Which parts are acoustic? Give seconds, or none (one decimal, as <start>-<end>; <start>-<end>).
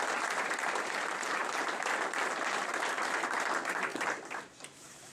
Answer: 1.4-2.6; 3.9-5.1